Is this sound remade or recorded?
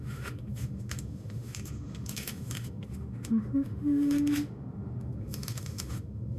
remade